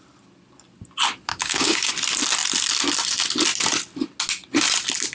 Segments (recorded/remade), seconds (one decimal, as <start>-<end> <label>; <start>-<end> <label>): 0.0-1.3 recorded; 1.3-1.9 remade; 1.9-5.1 recorded

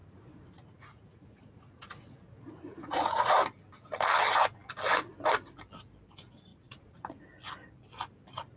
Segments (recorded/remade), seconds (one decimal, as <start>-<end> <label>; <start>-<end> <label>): 0.0-3.3 remade; 3.3-6.5 recorded; 6.5-7.2 remade; 7.2-8.6 recorded

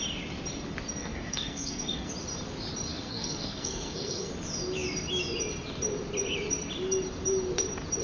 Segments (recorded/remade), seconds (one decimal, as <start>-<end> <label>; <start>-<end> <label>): 0.0-1.0 recorded; 1.0-2.1 remade; 2.1-2.9 recorded; 2.9-4.3 remade; 4.3-8.0 recorded

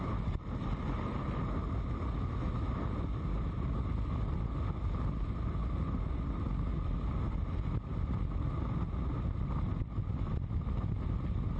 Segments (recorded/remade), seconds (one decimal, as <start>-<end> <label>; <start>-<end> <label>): 0.0-11.6 recorded

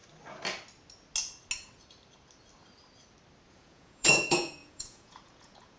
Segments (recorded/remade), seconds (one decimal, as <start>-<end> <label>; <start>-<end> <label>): 0.0-3.5 recorded; 3.5-5.8 remade

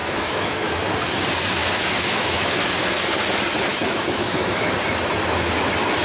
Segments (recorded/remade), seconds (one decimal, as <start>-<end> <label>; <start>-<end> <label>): 0.0-0.8 remade; 0.8-1.6 recorded; 1.6-2.6 remade; 2.6-3.7 recorded; 3.7-4.7 remade; 4.7-6.0 recorded

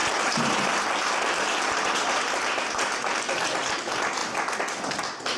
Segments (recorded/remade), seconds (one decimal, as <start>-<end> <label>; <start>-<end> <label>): 0.0-3.2 remade; 3.2-5.4 recorded

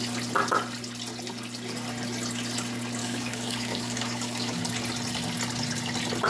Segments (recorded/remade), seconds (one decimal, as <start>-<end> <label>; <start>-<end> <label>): 0.0-3.0 recorded; 3.0-4.6 remade; 4.6-6.3 recorded